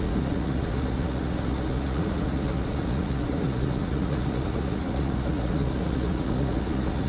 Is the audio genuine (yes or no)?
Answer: no